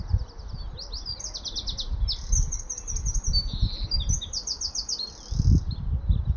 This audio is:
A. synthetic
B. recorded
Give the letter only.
B